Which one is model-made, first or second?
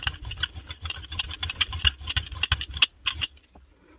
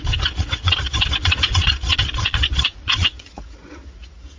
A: second